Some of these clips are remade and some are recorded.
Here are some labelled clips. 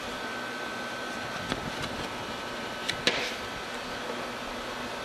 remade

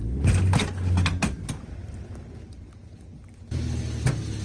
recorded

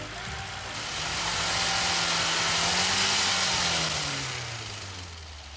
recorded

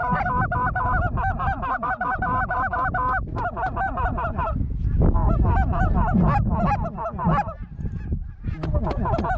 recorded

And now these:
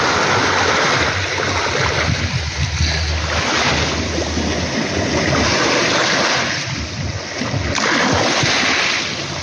recorded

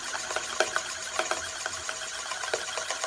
recorded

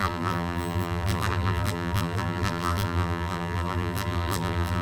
remade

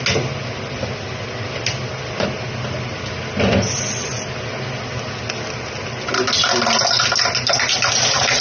recorded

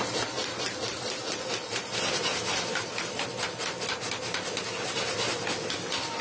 recorded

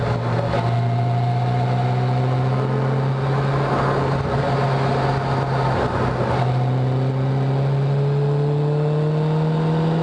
recorded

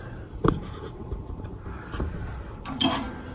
recorded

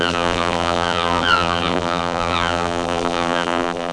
remade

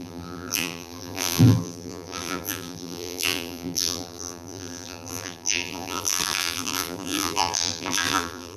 remade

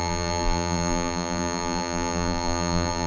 remade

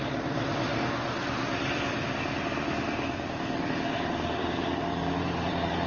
remade